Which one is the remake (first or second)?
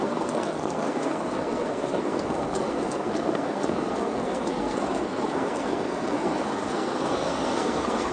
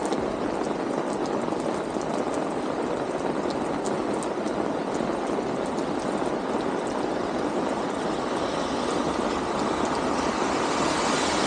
first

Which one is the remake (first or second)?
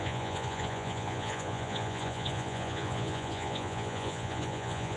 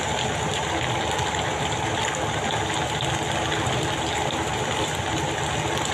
first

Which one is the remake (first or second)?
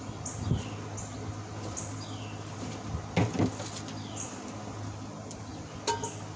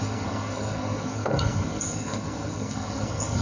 second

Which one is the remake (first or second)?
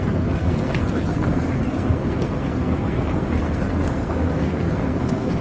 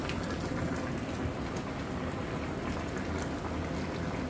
first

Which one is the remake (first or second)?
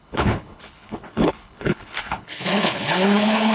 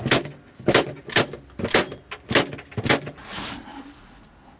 first